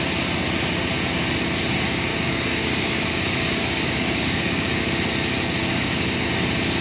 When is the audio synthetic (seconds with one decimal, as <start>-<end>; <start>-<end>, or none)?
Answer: 2.1-4.8; 5.7-6.3